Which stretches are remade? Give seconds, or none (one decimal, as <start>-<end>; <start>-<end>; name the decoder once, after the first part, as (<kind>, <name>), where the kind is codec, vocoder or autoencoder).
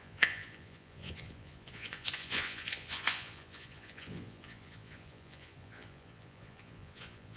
0.0-7.4 (vocoder, Vocos)